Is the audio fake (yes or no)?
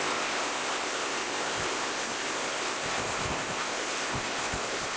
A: yes